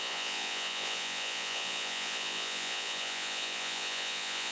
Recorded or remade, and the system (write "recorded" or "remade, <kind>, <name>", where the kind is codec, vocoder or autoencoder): remade, vocoder, Vocos